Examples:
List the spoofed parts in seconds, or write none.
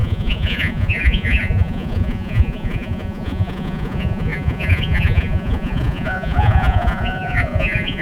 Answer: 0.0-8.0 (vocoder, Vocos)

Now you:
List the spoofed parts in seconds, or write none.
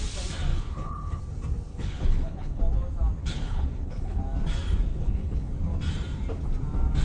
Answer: 0.5-1.2 (codec, HILCodec); 1.7-2.6; 3.2-4.2; 4.9-5.5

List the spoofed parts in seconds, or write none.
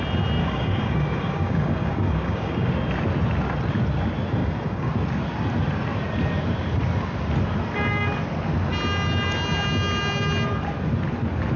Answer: 0.4-2.7 (codec, DAC); 4.4-4.9